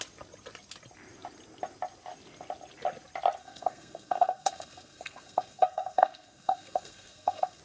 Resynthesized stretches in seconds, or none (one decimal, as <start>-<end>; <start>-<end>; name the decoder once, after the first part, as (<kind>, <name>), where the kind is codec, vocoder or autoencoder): 3.4-7.6 (codec, SNAC)